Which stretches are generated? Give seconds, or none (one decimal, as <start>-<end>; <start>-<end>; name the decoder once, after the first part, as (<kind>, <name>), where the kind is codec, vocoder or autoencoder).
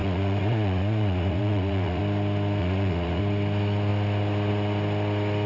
0.0-2.0 (vocoder, Vocos); 2.6-3.2